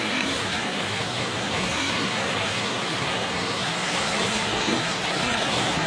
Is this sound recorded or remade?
remade